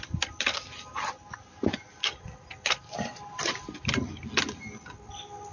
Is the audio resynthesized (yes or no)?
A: no